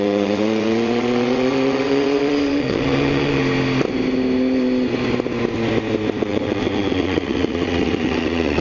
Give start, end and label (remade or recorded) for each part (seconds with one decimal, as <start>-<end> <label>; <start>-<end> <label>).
0.0-3.4 remade; 3.4-6.2 recorded; 6.2-8.6 remade